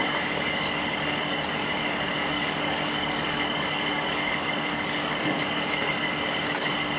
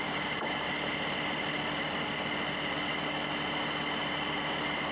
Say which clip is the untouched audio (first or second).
second